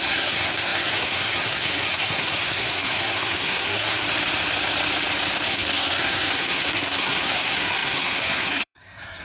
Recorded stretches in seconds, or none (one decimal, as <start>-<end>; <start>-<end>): 4.0-5.5

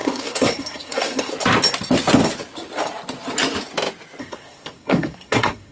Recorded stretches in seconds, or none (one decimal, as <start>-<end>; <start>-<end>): 1.3-4.2

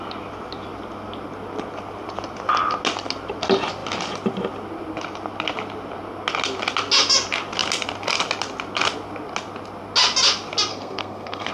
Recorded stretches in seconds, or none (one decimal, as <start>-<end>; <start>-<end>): 0.0-10.7

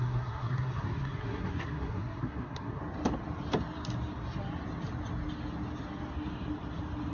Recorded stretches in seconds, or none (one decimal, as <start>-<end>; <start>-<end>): 2.8-7.1